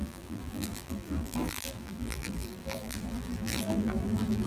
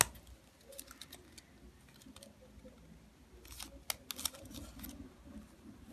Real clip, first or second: second